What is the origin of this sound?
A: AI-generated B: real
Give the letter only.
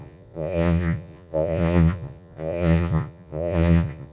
A